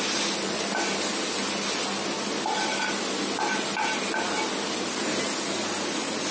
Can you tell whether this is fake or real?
real